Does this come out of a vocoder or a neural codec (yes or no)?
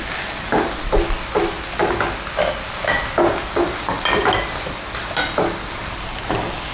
no